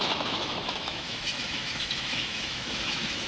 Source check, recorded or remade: remade